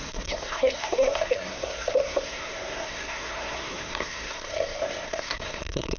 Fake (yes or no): yes